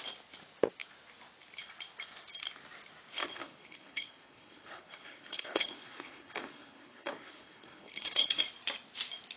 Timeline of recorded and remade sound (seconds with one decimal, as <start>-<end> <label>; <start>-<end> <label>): 0.0-3.2 recorded; 3.2-8.4 remade; 8.4-9.4 recorded